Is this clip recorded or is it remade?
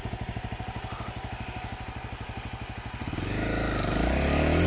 recorded